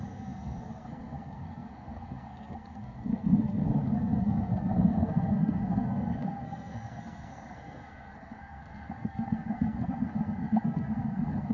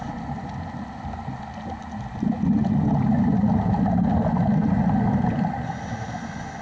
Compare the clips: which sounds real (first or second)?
second